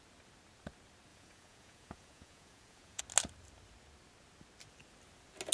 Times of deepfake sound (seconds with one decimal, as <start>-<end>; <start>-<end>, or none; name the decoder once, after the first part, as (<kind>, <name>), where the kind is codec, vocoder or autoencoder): 1.1-3.0 (vocoder, Vocos)